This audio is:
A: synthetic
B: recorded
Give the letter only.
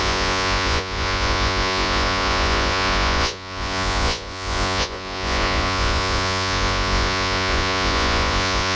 A